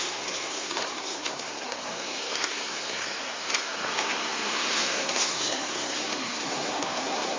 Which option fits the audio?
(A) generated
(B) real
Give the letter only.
A